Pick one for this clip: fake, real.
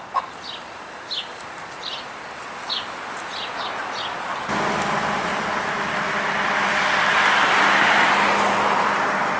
real